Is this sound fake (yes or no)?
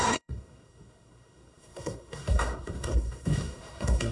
yes